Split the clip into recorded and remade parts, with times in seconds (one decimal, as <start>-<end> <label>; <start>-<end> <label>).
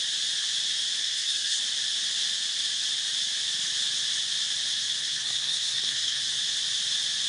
0.0-1.0 recorded; 1.0-1.6 remade; 1.6-5.0 recorded; 5.0-6.2 remade; 6.2-7.3 recorded